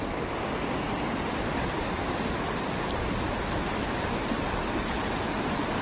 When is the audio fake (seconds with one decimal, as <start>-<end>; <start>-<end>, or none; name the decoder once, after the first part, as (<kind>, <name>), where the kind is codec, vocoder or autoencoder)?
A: none